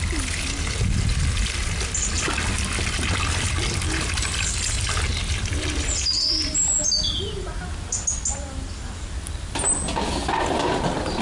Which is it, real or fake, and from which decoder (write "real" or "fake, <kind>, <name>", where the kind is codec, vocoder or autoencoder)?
real